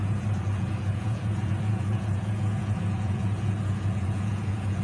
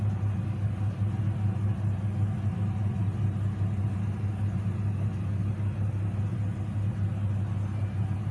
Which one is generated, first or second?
first